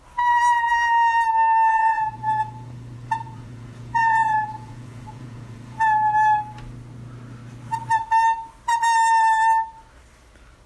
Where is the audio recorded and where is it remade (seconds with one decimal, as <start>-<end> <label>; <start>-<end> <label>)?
0.0-1.7 recorded; 1.7-5.8 remade; 5.8-10.7 recorded